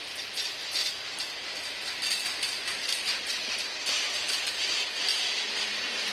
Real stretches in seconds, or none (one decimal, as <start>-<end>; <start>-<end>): 0.0-0.8; 4.4-5.1